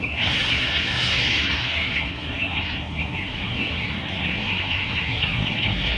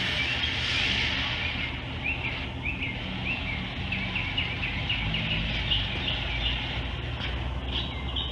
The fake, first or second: first